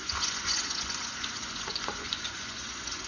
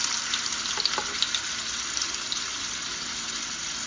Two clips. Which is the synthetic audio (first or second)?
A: first